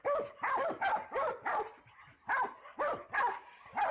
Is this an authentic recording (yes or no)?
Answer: yes